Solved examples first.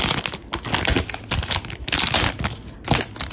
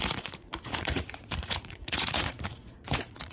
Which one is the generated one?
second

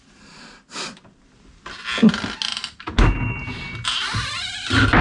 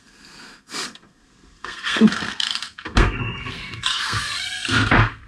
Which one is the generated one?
second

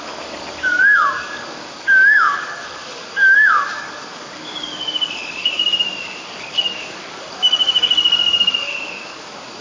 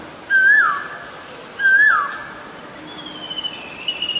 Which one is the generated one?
first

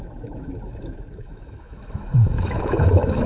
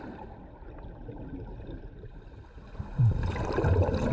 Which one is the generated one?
first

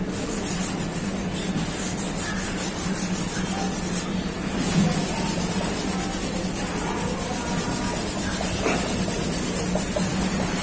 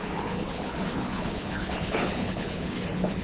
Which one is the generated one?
second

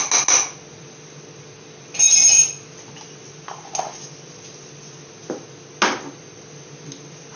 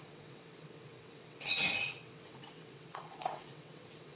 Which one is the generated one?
second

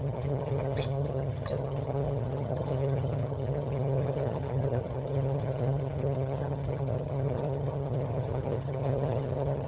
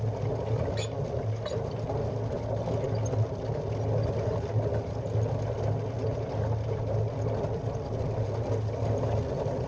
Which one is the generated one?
first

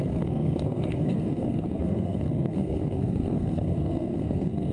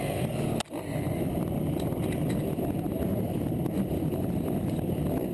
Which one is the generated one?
first